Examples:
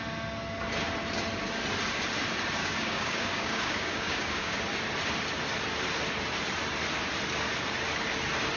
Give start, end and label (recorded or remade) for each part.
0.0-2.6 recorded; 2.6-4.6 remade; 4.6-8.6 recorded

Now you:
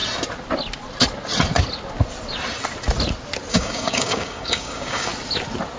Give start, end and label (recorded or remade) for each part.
0.0-3.5 recorded; 3.5-5.1 remade; 5.1-5.8 recorded

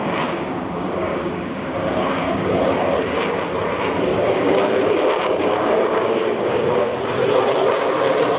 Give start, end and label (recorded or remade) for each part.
0.0-2.7 remade; 2.7-4.1 recorded; 4.1-7.0 remade; 7.0-8.4 recorded

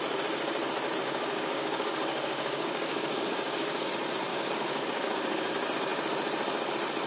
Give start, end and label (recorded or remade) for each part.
0.0-1.0 recorded; 1.0-3.9 remade; 3.9-4.3 recorded; 4.3-5.5 remade; 5.5-7.1 recorded

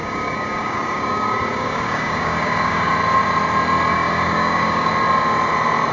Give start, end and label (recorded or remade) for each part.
0.0-2.9 remade; 2.9-3.9 recorded; 3.9-4.9 remade; 4.9-5.9 recorded

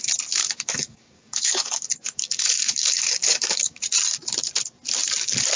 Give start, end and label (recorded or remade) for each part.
0.0-0.4 recorded; 0.4-3.8 remade; 3.8-5.6 recorded

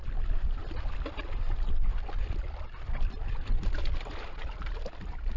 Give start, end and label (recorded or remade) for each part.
0.0-5.4 recorded

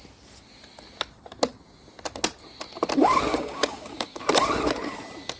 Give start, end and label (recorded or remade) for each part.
0.0-3.3 recorded; 3.3-4.2 remade; 4.2-5.4 recorded